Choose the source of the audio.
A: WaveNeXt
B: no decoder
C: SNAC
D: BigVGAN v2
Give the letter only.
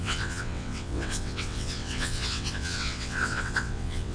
A